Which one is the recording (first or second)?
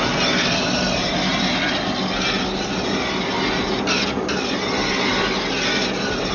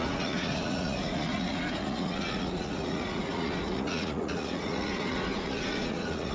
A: first